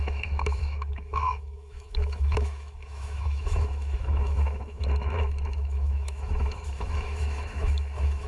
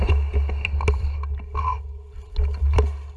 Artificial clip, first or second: first